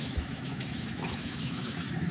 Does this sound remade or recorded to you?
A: remade